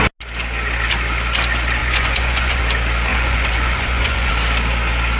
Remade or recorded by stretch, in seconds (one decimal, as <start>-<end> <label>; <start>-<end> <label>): 0.0-1.8 recorded; 1.8-2.6 remade; 2.6-3.1 recorded; 3.1-4.3 remade; 4.3-5.2 recorded